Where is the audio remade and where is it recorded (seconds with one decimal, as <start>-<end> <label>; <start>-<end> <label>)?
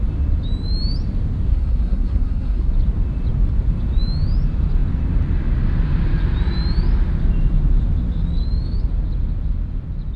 0.0-1.5 recorded; 1.5-2.7 remade; 2.7-10.2 recorded